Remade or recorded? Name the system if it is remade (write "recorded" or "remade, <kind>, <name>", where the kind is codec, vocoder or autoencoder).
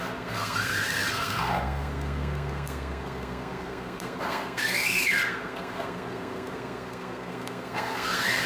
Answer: remade, codec, SNAC